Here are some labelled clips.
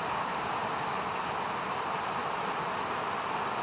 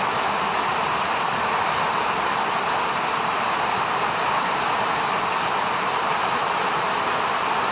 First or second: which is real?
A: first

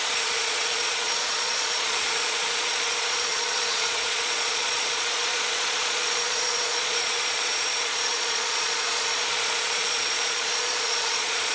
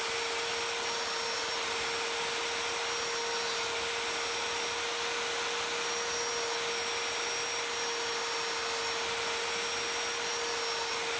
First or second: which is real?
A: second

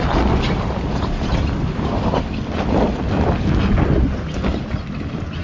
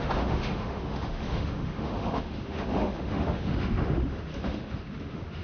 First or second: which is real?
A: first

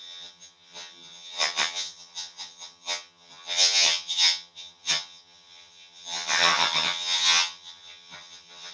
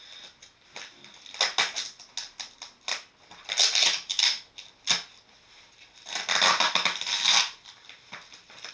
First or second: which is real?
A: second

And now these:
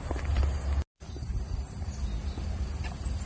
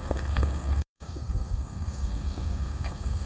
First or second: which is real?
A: first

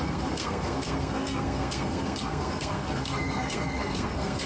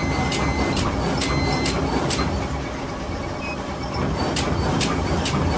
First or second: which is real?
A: second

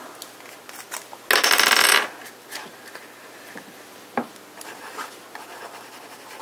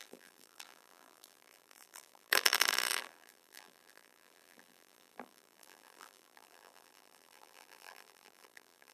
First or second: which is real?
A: first